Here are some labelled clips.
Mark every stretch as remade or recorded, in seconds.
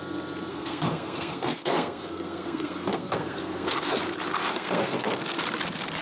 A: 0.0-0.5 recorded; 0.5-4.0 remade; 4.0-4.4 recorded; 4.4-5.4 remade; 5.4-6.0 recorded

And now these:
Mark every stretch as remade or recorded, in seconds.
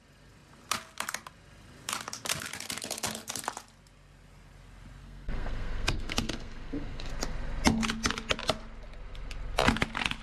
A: 0.0-5.0 recorded; 5.0-7.1 remade; 7.1-10.2 recorded